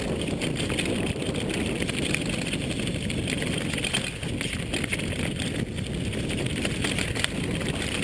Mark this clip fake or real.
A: real